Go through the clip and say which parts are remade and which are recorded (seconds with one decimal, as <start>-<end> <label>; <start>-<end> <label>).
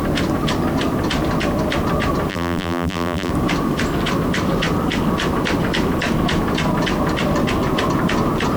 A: 0.0-2.3 recorded; 2.3-3.3 remade; 3.3-8.6 recorded